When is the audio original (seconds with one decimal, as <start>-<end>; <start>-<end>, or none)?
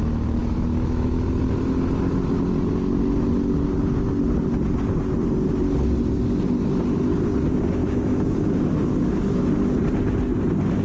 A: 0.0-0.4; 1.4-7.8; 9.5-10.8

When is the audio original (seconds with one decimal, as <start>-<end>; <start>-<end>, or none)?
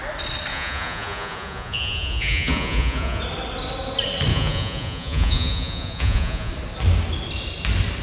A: 0.0-0.5; 3.2-4.3; 6.5-8.0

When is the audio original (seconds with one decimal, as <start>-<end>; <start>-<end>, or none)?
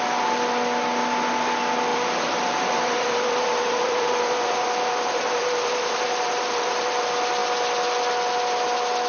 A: 0.0-1.9; 7.0-9.1